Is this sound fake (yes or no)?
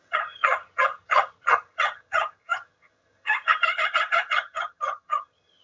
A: yes